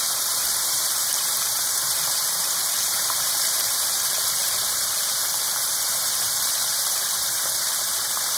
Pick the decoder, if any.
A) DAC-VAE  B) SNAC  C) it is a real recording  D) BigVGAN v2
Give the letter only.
D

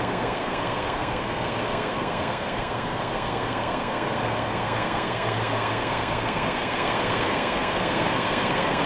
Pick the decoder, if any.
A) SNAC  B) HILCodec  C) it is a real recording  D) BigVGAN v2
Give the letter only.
A